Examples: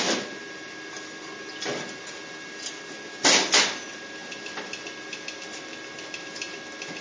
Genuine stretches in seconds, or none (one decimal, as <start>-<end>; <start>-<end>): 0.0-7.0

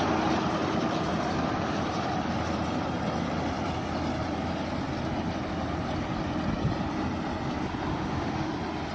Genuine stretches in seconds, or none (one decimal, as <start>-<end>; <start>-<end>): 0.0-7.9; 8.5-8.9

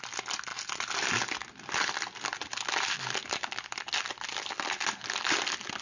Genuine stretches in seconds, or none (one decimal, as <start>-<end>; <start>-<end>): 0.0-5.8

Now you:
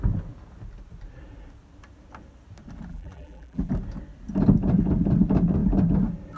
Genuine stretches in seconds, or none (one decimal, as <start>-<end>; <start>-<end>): 0.0-2.9; 3.7-6.4